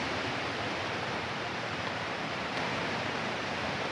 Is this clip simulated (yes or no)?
yes